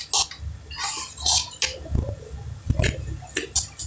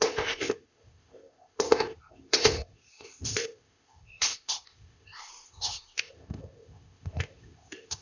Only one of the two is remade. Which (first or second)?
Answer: second